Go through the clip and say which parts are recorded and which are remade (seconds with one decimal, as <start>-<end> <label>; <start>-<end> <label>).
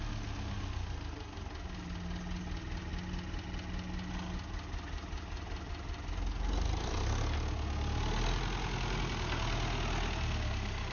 0.0-10.9 recorded